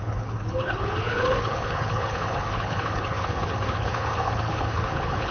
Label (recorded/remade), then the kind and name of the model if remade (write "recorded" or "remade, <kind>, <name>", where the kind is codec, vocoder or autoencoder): remade, codec, HILCodec